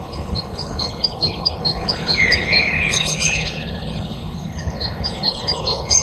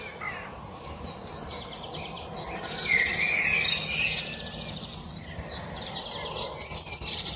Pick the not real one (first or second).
first